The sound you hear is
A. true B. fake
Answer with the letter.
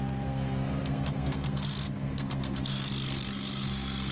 B